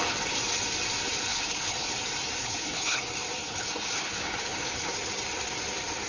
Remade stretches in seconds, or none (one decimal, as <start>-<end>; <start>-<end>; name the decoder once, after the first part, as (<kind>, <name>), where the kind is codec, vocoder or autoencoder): 1.3-1.9 (codec, HILCodec); 2.4-3.0; 3.4-4.9